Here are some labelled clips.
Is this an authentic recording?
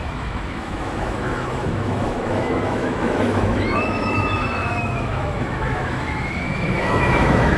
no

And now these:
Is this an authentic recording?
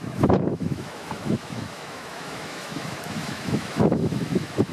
no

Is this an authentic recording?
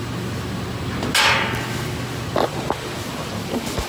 yes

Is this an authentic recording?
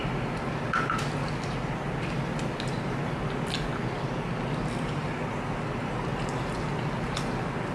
yes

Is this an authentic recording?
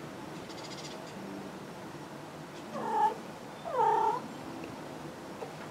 yes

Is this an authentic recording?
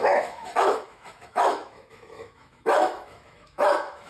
no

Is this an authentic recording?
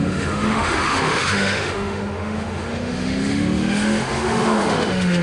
no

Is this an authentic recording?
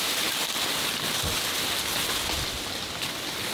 yes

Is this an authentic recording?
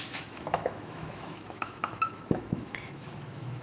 no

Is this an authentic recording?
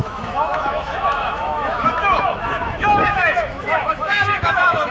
no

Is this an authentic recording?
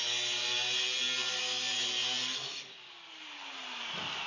yes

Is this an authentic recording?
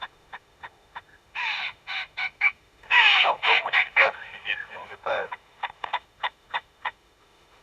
no